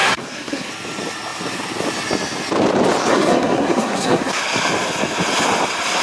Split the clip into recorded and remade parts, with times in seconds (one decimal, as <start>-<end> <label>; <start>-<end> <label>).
0.0-0.7 remade; 0.7-3.1 recorded; 3.1-4.4 remade; 4.4-6.0 recorded